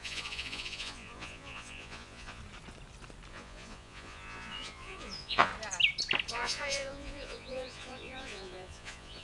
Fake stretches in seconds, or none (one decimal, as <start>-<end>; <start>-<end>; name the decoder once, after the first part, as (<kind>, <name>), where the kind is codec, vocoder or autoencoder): 0.0-2.4 (vocoder, Vocos); 3.3-5.5; 6.3-9.2